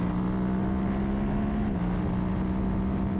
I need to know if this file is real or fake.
real